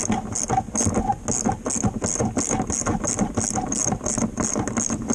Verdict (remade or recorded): recorded